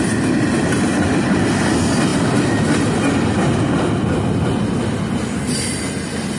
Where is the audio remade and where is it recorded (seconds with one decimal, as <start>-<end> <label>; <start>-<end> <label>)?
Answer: 0.0-6.4 recorded